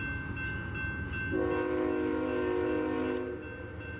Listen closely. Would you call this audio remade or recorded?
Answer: recorded